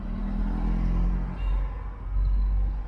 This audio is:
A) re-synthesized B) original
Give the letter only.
B